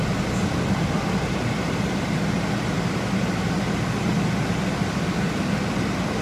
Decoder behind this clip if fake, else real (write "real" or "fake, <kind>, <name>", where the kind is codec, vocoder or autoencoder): real